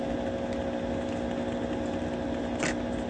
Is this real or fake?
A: real